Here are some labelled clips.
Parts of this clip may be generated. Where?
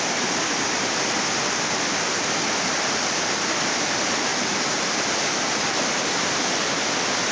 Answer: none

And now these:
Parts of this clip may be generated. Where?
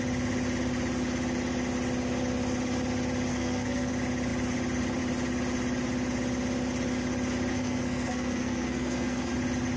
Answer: 3.3-3.9 (codec, SNAC); 7.5-9.3